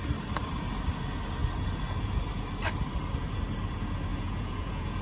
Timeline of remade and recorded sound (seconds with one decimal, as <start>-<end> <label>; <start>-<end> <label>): 0.0-4.1 recorded; 4.1-5.0 remade